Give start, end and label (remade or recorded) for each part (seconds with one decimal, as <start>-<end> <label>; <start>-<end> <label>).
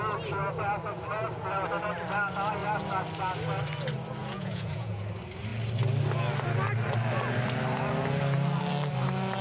0.0-4.2 recorded; 4.2-5.0 remade; 5.0-9.4 recorded